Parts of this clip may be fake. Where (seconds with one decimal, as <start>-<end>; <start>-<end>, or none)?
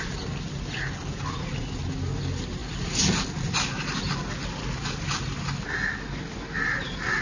none